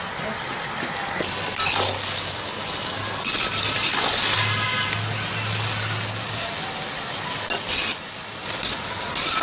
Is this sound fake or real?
real